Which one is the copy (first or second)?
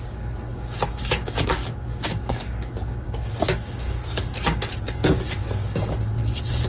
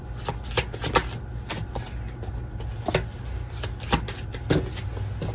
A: first